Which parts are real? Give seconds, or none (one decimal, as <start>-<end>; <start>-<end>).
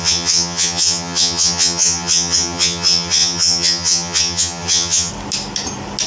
5.1-6.1